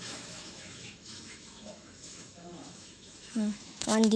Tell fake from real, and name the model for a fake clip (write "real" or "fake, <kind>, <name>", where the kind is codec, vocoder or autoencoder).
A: fake, autoencoder, DAC-VAE